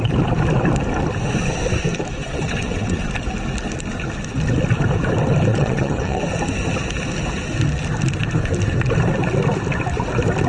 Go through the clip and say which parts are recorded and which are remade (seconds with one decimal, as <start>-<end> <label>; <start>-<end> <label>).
0.0-2.2 recorded; 2.2-3.1 remade; 3.1-5.5 recorded; 5.5-6.2 remade; 6.2-10.5 recorded